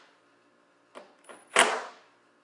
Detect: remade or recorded recorded